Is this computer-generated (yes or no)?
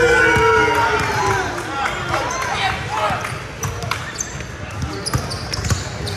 no